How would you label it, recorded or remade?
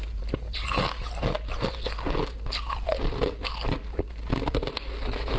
recorded